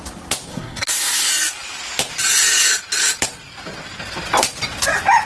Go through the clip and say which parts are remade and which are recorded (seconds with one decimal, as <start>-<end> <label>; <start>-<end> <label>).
0.0-0.5 recorded; 0.5-1.3 remade; 1.3-5.3 recorded